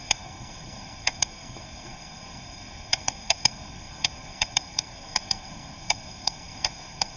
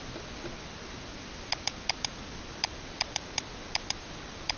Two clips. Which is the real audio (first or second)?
second